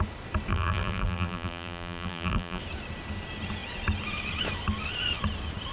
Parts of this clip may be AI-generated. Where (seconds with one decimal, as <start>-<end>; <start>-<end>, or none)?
0.5-2.6